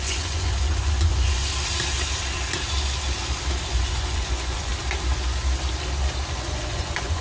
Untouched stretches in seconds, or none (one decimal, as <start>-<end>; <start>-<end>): 1.4-3.7; 4.7-6.3